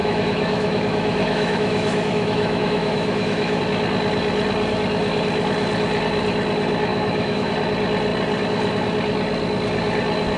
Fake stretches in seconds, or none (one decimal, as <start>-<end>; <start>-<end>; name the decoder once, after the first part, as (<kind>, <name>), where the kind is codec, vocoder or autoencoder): 0.0-3.6 (autoencoder, DAC-VAE); 6.9-7.5